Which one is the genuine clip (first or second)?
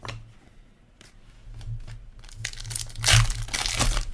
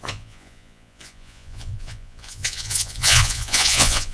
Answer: first